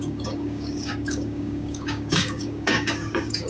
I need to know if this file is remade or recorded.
remade